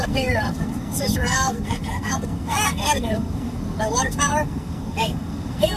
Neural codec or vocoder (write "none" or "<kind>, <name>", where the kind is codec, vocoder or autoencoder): codec, SNAC